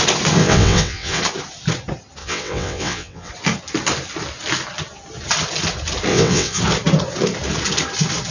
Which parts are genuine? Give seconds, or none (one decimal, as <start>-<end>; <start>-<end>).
0.0-0.4; 1.2-2.2; 3.3-6.1; 6.6-8.3